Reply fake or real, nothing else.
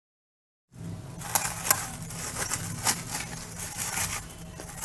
real